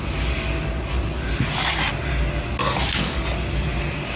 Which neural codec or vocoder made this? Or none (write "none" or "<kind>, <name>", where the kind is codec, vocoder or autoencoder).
none